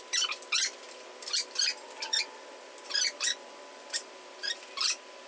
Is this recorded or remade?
remade